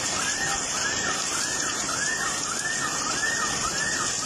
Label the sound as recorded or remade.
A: remade